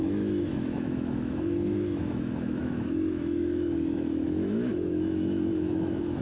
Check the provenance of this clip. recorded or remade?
remade